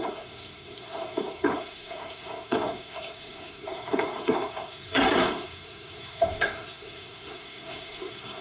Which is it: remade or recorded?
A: remade